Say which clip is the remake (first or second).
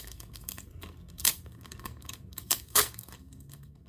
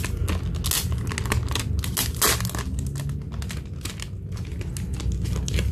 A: first